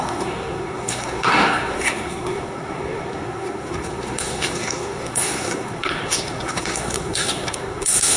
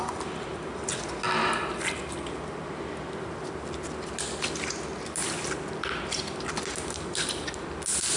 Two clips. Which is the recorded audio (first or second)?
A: second